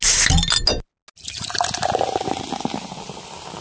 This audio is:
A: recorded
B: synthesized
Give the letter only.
A